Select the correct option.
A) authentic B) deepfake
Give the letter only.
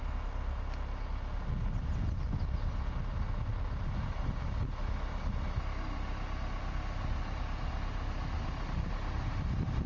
A